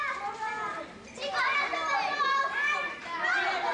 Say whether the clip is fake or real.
real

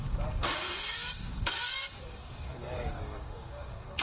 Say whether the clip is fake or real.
fake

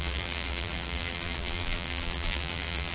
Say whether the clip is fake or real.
fake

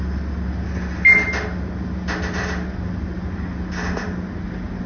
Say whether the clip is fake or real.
real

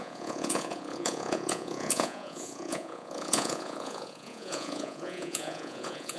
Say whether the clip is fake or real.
fake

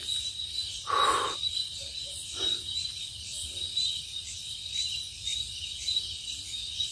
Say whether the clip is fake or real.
fake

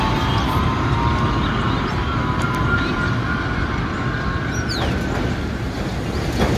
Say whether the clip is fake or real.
real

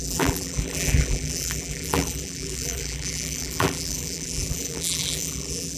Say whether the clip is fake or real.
fake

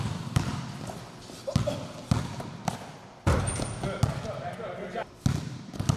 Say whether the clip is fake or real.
real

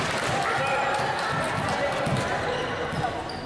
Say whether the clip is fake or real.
real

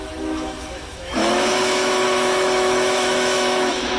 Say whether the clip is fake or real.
fake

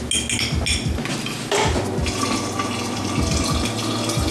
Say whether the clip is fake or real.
real